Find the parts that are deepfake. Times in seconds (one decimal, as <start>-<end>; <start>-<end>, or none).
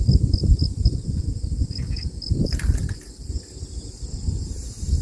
0.7-2.9